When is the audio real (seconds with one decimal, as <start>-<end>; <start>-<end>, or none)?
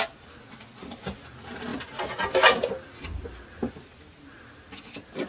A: 0.0-5.3